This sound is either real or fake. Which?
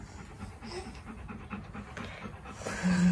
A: real